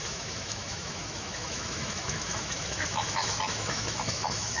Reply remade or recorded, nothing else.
remade